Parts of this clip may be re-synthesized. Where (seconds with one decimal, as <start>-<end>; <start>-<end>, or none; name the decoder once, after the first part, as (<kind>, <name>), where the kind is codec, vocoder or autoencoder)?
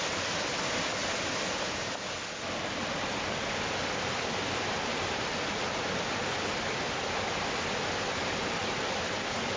none